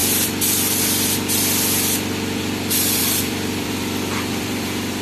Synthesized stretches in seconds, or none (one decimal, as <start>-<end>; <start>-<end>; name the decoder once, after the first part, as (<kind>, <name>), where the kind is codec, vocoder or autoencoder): 3.0-5.0 (vocoder, BigVGAN v2)